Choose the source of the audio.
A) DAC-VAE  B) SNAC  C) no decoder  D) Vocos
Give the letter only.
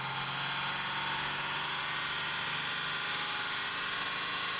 C